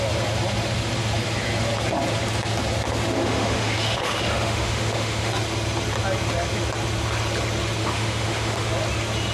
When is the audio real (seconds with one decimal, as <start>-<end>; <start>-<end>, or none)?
0.0-3.2; 5.3-7.8; 8.7-9.3